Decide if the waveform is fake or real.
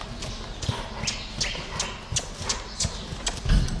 real